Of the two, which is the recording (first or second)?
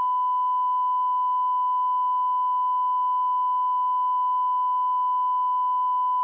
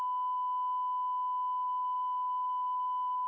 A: first